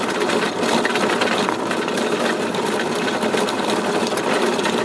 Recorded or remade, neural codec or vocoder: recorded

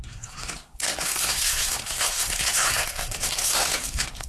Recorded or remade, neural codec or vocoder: remade, codec, SNAC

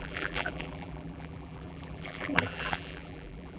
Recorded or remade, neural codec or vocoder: remade, vocoder, BigVGAN v2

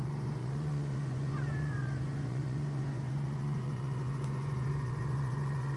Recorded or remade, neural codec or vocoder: remade, vocoder, Vocos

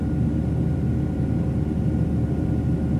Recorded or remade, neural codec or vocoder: recorded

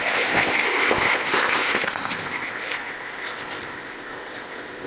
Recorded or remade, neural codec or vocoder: remade, codec, ZipCodec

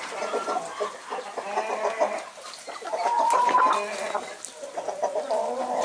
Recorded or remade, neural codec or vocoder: recorded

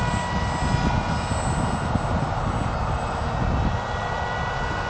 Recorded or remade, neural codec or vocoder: recorded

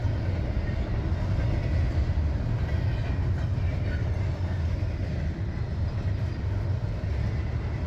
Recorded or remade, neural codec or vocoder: recorded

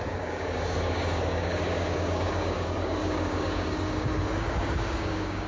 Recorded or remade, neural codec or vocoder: remade, codec, DAC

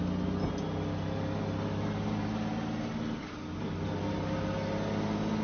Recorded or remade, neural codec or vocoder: recorded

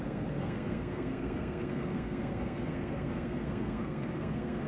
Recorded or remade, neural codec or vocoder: remade, codec, SNAC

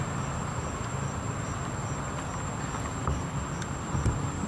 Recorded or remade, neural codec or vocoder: recorded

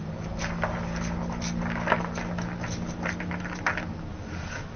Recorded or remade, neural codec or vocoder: recorded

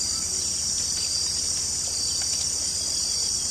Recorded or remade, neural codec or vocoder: recorded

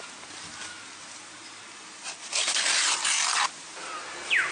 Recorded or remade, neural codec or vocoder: recorded